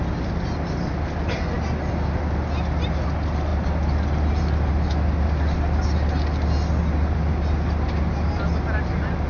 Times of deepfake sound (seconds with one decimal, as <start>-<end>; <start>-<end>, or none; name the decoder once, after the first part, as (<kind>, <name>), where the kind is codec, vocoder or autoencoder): none